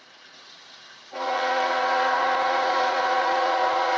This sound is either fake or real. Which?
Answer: fake